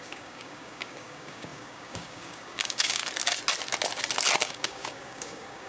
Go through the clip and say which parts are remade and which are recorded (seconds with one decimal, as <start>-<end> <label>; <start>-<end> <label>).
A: 0.0-3.0 remade; 3.0-4.4 recorded; 4.4-5.7 remade